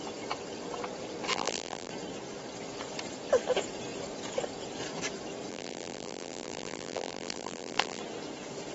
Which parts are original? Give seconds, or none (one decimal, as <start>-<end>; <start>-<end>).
0.0-1.3; 1.9-5.5; 8.0-8.7